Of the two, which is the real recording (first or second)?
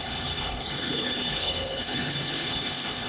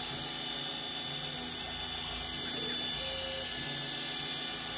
second